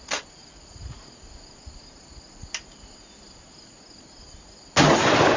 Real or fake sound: real